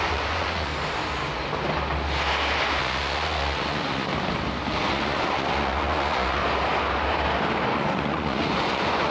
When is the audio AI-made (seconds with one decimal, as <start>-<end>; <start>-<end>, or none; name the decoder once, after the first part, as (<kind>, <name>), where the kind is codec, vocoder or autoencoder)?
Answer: 0.0-0.7 (vocoder, Vocos); 2.8-4.1; 4.9-6.4; 7.7-9.1